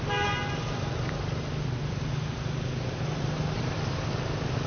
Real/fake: real